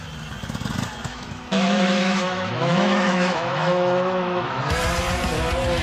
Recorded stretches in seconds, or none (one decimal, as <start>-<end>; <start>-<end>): 0.0-1.1; 4.6-5.8